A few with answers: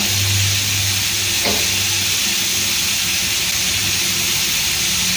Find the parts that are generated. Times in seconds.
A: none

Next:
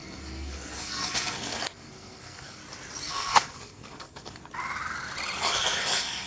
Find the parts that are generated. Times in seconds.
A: 0.0-2.6 (codec, SNAC); 3.1-4.4; 5.4-6.3

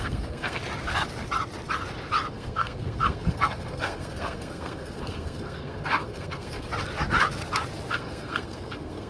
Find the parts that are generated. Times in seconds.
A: 0.0-0.6 (codec, SNAC); 2.3-6.7; 7.9-9.1

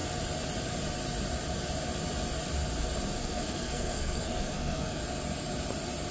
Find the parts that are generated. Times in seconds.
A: 3.2-5.0 (codec, SNAC)

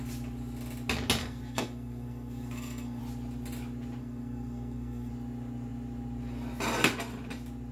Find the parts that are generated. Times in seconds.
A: 1.2-3.0 (codec, SNAC); 4.0-5.1

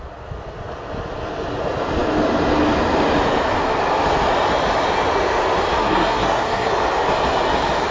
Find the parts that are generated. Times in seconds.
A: 5.8-6.7 (codec, SNAC)

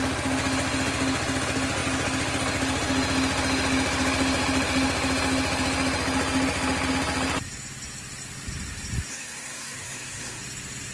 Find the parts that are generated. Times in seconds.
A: 9.1-10.4 (codec, SNAC)